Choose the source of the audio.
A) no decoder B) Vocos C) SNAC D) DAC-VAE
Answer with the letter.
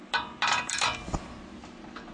A